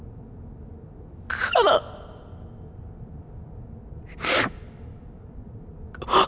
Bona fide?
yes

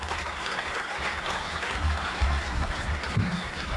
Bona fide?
no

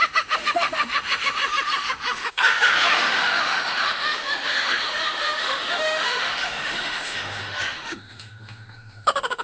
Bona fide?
no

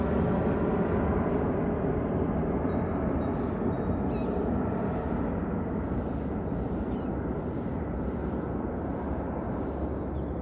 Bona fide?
yes